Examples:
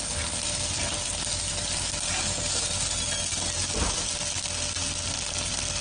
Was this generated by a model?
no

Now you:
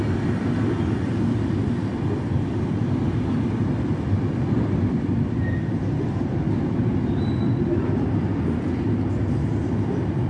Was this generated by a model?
no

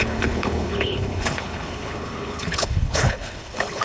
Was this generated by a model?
yes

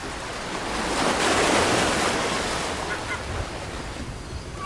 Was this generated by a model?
no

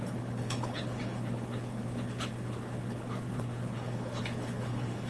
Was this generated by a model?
yes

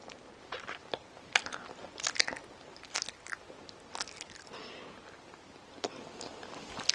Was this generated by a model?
no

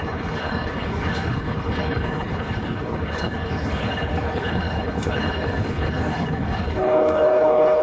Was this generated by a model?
yes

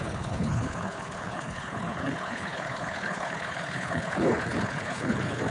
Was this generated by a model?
yes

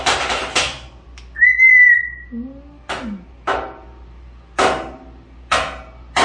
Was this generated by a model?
no